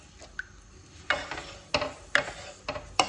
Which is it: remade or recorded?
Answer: recorded